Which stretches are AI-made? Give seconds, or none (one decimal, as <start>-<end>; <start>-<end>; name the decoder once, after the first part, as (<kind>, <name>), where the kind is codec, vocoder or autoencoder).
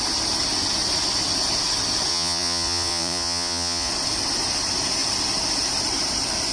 2.1-3.9 (vocoder, Vocos)